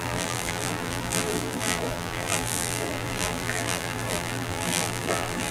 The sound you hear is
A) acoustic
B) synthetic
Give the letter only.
B